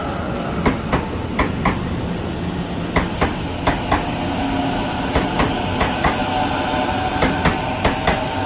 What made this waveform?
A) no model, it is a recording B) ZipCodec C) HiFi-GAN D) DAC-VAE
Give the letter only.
A